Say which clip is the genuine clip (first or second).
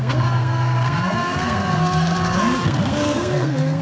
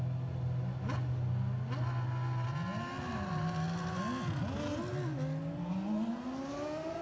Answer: second